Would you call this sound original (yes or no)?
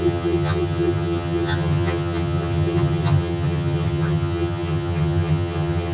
no